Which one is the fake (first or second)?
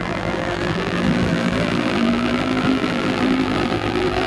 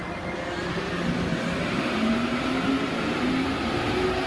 first